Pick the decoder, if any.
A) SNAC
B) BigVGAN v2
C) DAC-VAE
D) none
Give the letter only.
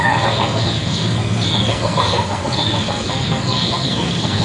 A